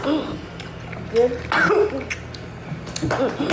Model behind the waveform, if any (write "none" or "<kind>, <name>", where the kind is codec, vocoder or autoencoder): none